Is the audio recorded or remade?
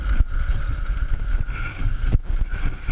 recorded